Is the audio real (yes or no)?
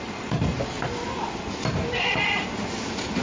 yes